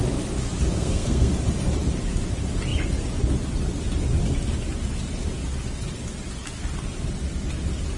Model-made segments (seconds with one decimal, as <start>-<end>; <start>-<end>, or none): 0.7-1.3